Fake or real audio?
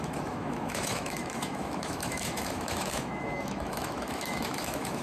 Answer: fake